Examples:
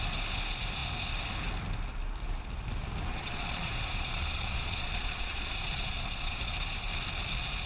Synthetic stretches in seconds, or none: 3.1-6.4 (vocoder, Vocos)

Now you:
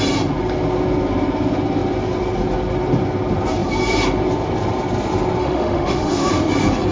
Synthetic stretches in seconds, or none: 5.4-6.3 (autoencoder, DAC-VAE)